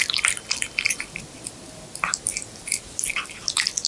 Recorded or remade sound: recorded